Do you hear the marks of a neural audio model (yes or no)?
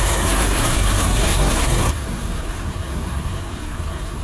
yes